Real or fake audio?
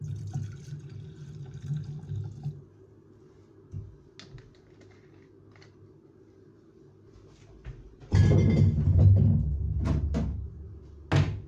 real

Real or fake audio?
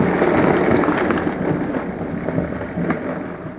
real